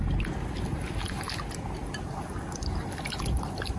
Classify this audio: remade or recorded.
recorded